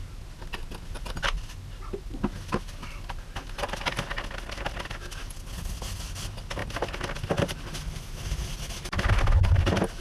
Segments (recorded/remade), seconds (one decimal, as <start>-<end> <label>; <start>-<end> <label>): 0.0-10.0 recorded